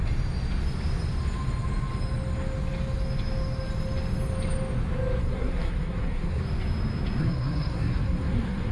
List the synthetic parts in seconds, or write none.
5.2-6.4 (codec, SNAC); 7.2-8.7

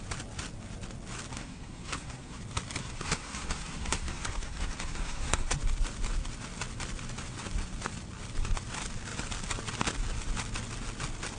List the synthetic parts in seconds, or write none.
1.3-2.4 (codec, SNAC); 2.8-5.6

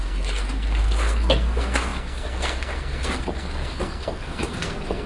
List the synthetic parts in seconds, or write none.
0.0-5.1 (codec, SNAC)